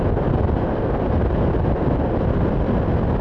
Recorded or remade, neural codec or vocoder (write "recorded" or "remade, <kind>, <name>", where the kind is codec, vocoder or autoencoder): recorded